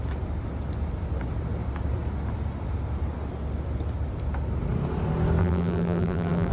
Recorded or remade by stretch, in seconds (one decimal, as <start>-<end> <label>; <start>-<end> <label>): 0.0-5.4 recorded; 5.4-6.5 remade